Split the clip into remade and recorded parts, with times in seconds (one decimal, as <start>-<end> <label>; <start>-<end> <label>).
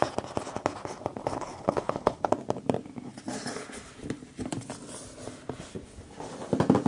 0.0-1.2 recorded; 1.2-2.3 remade; 2.3-6.9 recorded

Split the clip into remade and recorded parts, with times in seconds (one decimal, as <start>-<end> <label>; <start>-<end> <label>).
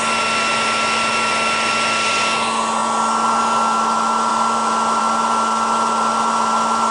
0.0-6.9 recorded